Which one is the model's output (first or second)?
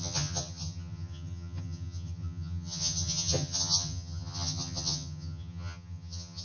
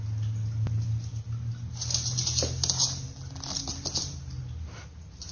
first